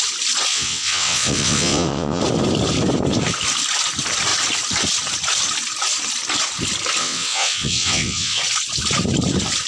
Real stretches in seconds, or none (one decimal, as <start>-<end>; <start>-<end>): 0.0-0.5; 2.2-7.0; 8.4-9.7